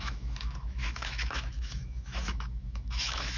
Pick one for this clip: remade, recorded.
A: remade